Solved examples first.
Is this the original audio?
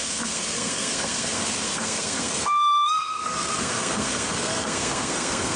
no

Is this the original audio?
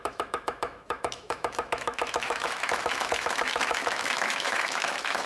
no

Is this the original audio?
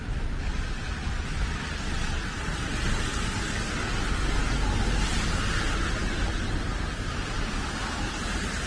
yes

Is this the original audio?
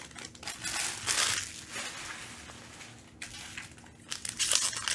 yes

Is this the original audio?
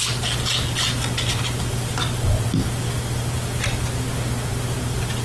yes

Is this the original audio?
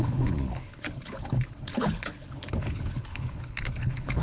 no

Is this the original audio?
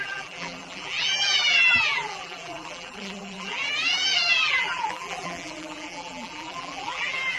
no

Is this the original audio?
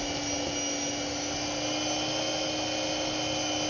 yes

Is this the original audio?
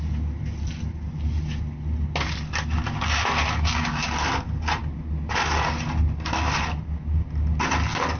yes